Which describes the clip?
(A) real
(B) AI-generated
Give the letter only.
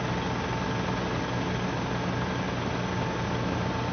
A